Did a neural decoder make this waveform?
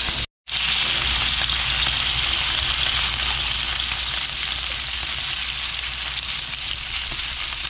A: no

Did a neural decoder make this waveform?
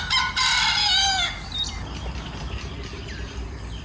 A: no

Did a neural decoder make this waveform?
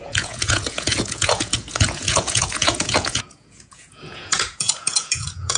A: yes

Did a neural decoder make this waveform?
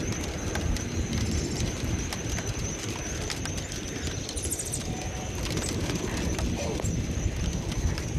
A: no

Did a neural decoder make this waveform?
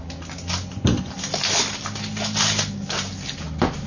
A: no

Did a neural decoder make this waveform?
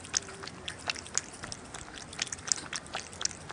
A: no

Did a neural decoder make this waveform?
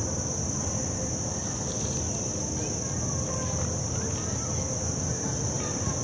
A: no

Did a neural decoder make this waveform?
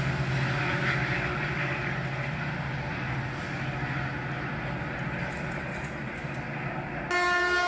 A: no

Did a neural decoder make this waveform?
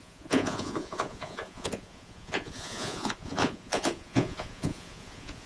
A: yes